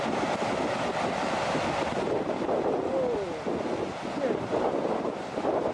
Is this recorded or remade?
recorded